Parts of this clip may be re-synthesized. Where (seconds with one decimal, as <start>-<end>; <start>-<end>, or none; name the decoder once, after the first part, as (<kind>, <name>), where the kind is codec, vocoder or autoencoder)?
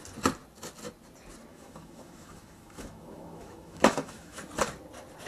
1.5-4.4 (autoencoder, DAC-VAE)